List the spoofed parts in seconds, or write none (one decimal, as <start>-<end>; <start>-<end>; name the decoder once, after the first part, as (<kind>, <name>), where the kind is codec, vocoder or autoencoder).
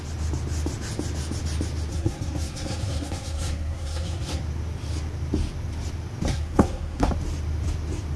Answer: 1.9-4.4 (codec, SNAC); 6.3-7.1